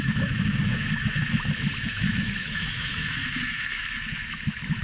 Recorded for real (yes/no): no